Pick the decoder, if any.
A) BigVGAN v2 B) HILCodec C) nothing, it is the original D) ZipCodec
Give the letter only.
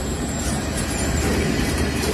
A